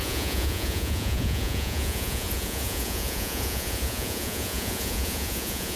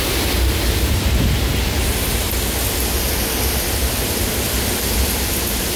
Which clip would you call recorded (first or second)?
second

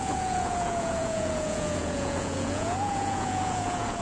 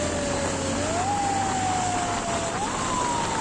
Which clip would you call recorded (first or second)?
second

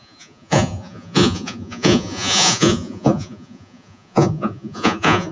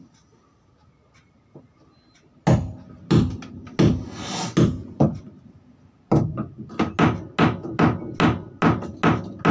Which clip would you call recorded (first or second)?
second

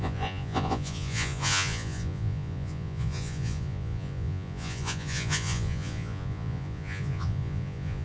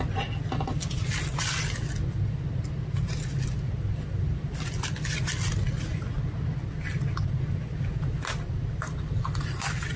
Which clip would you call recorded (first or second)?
second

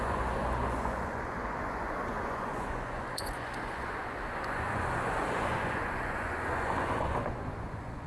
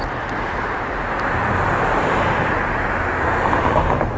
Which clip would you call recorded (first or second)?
second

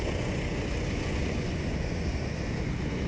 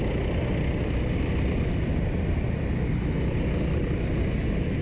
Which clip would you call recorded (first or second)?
second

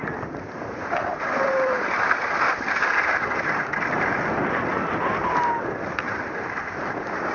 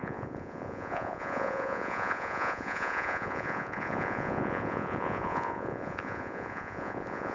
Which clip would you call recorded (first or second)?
first